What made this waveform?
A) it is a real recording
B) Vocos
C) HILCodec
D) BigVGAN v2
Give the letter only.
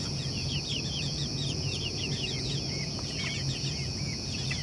B